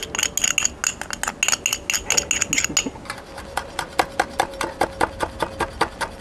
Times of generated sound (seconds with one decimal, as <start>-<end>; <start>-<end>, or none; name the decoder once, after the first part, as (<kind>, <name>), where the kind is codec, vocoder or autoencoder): none